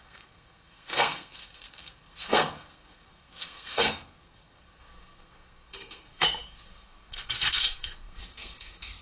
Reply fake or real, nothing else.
fake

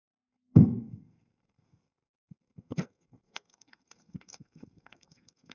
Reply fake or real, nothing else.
fake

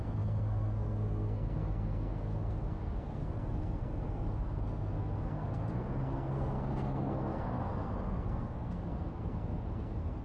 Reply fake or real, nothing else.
fake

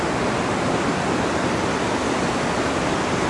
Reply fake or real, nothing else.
real